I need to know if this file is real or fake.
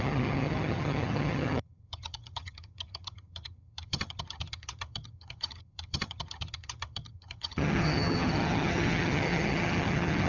fake